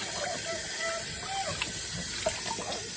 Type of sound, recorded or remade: recorded